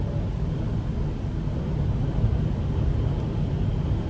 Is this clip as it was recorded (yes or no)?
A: yes